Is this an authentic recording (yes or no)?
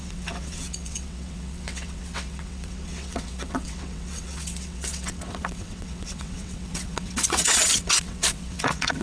no